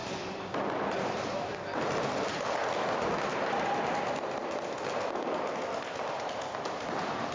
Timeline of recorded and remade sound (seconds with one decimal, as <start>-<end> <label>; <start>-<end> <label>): 0.0-7.3 recorded